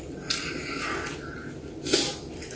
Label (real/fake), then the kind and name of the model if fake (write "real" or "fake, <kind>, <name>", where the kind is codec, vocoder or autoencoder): real